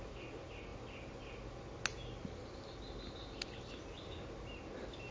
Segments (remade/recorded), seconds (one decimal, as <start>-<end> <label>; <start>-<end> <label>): 0.0-5.1 recorded